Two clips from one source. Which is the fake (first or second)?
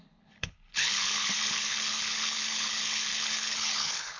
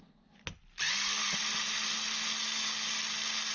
first